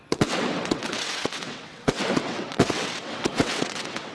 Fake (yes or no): yes